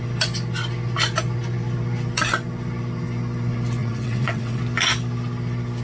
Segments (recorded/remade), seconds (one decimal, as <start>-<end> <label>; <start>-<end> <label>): 0.0-3.8 recorded; 3.8-4.6 remade; 4.6-5.8 recorded